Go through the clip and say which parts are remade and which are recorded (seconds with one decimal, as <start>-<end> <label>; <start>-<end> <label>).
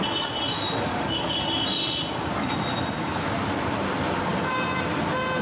0.0-0.9 recorded; 0.9-1.4 remade; 1.4-5.4 recorded